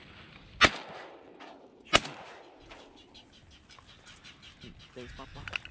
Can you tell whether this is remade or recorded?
recorded